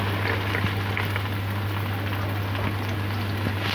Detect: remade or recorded recorded